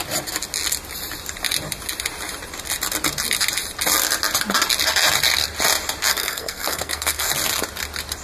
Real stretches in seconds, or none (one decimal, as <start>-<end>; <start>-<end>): 0.0-6.1; 7.3-8.2

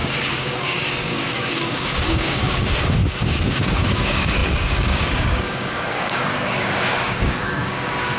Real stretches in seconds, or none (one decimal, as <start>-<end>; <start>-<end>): none

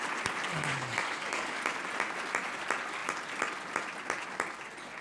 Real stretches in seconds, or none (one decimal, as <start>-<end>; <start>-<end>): 0.0-0.5; 1.6-5.0